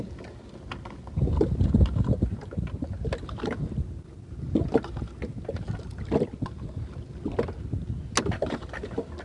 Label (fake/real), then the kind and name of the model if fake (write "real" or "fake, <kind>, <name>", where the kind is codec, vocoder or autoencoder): real